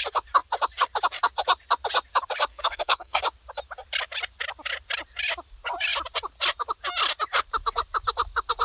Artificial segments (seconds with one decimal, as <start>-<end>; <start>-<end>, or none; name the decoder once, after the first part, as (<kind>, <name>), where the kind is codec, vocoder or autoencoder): 2.5-3.2 (codec, SNAC)